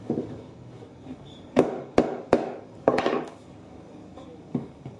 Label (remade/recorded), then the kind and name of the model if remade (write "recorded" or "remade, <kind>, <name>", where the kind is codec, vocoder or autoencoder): remade, codec, DAC